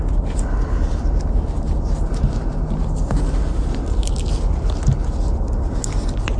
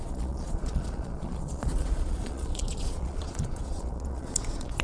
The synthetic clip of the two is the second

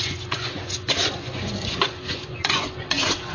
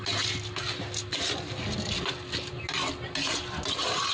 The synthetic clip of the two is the first